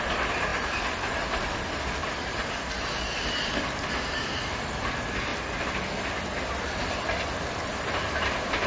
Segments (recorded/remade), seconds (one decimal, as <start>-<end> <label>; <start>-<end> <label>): 0.0-0.5 recorded; 0.5-1.1 remade; 1.1-2.0 recorded; 2.0-3.7 remade; 3.7-8.7 recorded